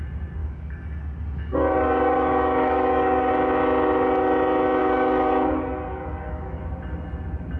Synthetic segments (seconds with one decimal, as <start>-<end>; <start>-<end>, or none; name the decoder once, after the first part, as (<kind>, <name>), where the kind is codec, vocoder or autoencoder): 0.4-3.3 (codec, DAC); 4.8-6.6